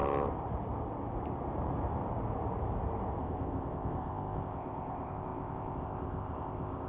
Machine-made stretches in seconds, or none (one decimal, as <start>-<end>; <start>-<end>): 3.2-6.9